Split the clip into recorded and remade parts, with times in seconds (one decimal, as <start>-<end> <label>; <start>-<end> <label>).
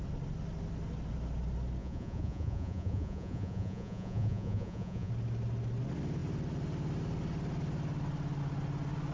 0.0-1.8 recorded; 1.8-5.1 remade; 5.1-9.1 recorded